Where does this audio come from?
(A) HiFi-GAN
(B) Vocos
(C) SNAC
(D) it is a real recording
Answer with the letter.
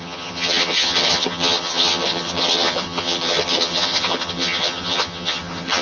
A